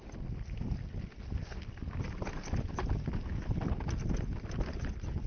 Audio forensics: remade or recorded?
recorded